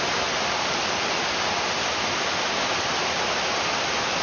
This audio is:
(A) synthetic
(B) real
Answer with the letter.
A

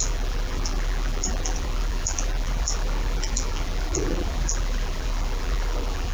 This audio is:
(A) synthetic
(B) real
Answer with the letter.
A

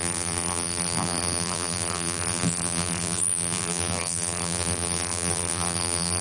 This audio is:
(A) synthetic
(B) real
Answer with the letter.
A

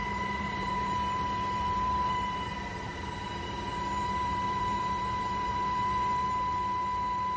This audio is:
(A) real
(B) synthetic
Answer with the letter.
B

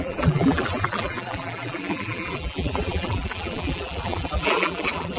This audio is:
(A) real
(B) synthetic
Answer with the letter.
B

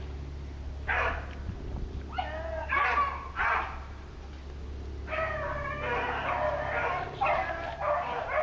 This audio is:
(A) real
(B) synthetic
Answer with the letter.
A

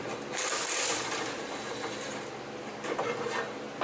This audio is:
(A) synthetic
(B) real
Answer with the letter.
B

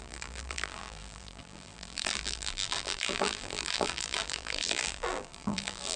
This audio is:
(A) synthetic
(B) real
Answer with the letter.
A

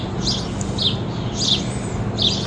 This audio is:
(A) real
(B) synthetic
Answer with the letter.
A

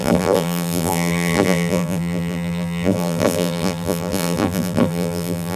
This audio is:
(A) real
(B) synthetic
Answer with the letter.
B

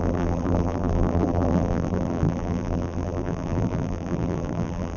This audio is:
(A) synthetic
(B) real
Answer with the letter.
A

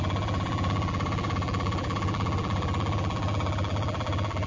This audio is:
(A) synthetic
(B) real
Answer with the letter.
A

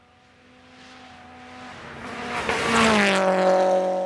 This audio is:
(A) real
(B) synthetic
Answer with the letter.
A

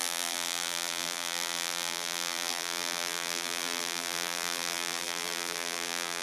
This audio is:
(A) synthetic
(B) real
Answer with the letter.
A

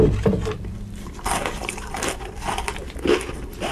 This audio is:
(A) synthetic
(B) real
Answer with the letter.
A